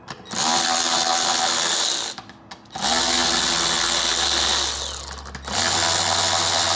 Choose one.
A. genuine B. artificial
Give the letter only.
A